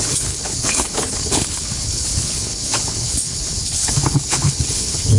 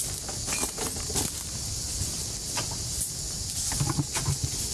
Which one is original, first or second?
second